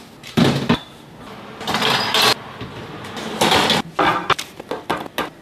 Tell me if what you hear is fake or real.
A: real